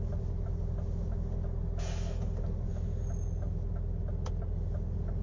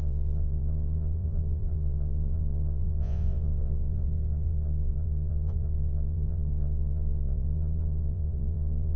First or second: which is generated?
second